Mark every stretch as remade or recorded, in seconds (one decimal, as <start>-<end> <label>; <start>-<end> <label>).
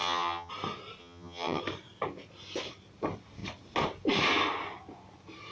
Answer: 0.0-0.5 remade; 0.5-1.0 recorded; 1.0-1.6 remade; 1.6-5.5 recorded